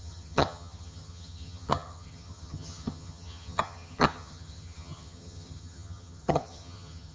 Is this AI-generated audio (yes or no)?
yes